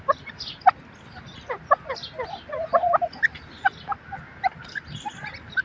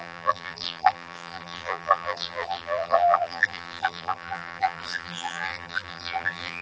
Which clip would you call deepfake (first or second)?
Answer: second